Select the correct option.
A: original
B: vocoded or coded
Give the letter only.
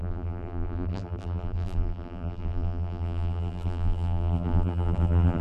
B